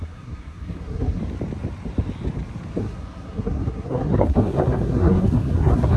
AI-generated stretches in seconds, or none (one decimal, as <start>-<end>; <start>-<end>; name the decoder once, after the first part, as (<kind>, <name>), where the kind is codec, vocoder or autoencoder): 0.0-1.2 (codec, SNAC); 2.8-6.0